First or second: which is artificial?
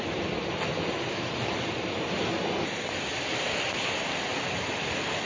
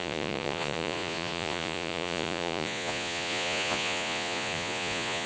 second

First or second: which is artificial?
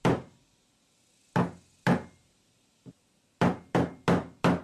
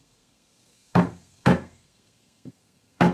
second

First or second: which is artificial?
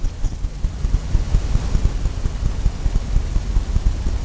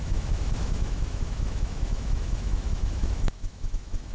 second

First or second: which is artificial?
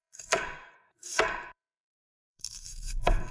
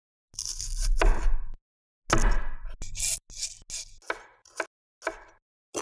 first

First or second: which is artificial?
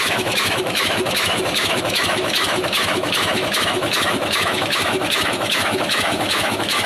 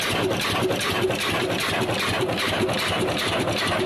first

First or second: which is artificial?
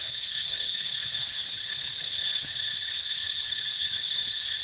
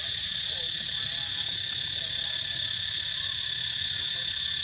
first